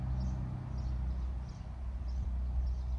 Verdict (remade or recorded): recorded